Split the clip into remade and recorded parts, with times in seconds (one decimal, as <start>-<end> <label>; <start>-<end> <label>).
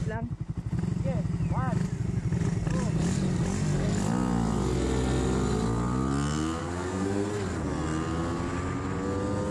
0.0-6.6 recorded; 6.6-7.3 remade; 7.3-9.5 recorded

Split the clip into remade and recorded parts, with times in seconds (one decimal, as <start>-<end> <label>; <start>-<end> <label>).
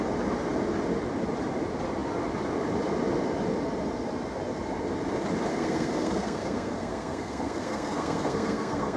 0.0-5.5 recorded; 5.5-9.0 remade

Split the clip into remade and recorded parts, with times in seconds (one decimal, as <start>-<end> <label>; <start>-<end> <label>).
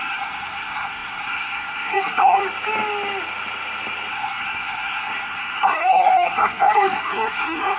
0.0-2.4 remade; 2.4-4.1 recorded; 4.1-7.8 remade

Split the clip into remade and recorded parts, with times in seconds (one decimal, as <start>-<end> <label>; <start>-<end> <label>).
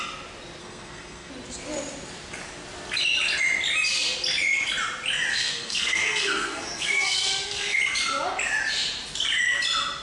0.0-0.6 recorded; 0.6-1.3 remade; 1.3-5.3 recorded; 5.3-7.8 remade; 7.8-10.0 recorded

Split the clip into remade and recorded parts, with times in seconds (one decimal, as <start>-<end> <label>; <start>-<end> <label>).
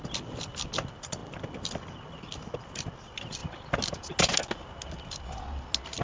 0.0-6.0 recorded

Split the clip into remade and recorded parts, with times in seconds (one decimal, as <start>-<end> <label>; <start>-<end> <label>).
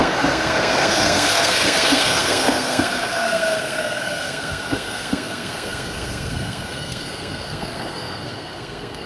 0.0-9.1 remade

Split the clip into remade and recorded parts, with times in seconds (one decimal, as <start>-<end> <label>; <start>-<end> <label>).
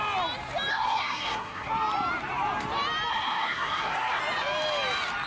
0.0-0.7 recorded; 0.7-1.7 remade; 1.7-3.1 recorded; 3.1-4.2 remade; 4.2-5.3 recorded